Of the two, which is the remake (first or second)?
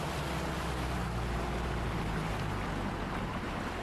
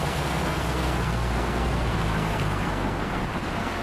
second